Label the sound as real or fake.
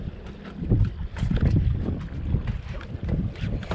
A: real